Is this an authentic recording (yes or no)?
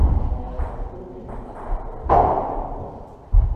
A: yes